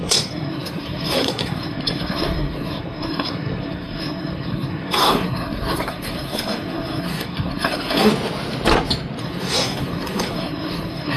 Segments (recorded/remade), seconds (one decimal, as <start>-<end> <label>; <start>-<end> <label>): 0.0-8.1 remade; 8.1-9.2 recorded; 9.2-11.2 remade